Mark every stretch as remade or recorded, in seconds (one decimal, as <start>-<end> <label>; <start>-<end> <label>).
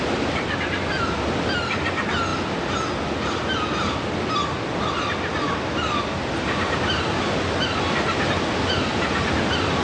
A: 0.0-9.8 recorded